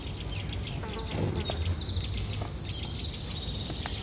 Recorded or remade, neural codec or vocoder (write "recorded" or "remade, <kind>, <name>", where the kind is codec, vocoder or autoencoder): recorded